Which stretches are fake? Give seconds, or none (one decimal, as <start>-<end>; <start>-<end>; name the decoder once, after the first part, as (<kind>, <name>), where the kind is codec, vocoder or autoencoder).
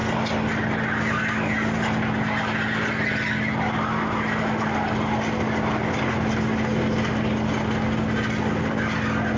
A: none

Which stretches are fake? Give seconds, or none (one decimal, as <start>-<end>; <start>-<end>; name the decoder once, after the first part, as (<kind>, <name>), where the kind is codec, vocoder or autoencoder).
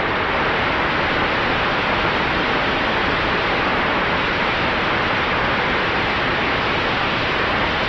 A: none